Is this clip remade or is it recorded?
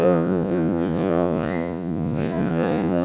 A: remade